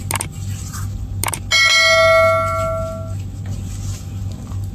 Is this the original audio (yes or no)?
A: yes